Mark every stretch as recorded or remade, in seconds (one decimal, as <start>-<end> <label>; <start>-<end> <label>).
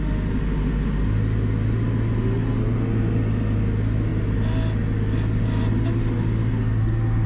0.0-7.3 recorded